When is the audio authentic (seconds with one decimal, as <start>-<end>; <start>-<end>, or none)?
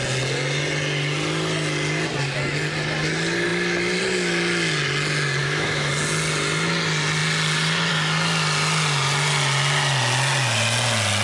0.0-5.4; 5.9-11.2